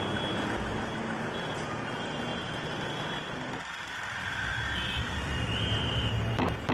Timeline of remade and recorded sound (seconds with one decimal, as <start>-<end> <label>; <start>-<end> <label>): 0.0-6.7 recorded

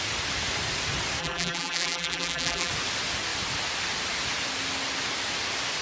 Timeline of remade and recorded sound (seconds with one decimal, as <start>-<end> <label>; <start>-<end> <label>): 0.0-1.2 recorded; 1.2-2.7 remade; 2.7-5.8 recorded

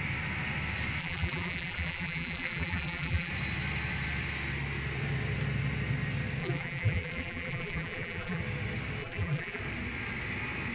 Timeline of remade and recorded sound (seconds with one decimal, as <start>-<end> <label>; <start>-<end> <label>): 0.0-1.0 recorded; 1.0-3.3 remade; 3.3-6.4 recorded; 6.4-8.4 remade; 8.4-9.0 recorded; 9.0-9.6 remade; 9.6-10.7 recorded

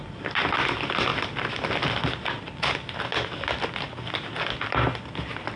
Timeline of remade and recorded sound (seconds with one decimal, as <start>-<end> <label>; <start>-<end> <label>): 0.0-5.6 recorded

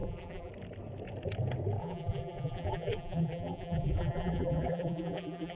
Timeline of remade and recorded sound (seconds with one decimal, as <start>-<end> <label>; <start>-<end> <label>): 0.0-0.5 remade; 0.5-1.8 recorded; 1.8-5.6 remade

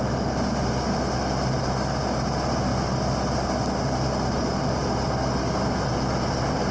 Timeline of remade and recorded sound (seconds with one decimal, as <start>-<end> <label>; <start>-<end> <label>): 0.0-6.7 recorded

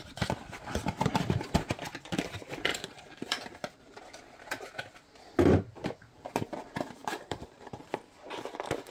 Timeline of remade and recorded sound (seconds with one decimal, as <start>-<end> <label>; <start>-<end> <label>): 0.0-2.7 recorded; 2.7-4.0 remade; 4.0-7.0 recorded; 7.0-7.9 remade; 7.9-8.9 recorded